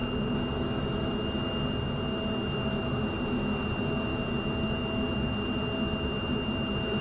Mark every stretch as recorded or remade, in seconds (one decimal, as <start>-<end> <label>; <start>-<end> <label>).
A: 0.0-7.0 recorded